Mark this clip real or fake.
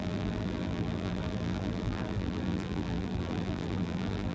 fake